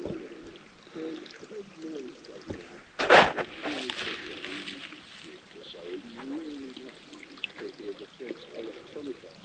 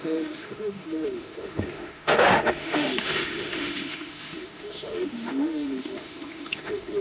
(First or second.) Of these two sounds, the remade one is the second